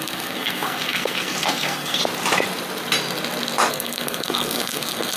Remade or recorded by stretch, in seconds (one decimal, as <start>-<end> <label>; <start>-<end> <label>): 0.0-2.0 remade; 2.0-3.7 recorded; 3.7-5.2 remade